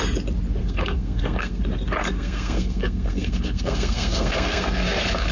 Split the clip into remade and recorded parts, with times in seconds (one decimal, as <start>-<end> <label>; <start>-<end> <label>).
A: 0.0-0.6 recorded; 0.6-1.6 remade; 1.6-2.0 recorded; 2.0-5.3 remade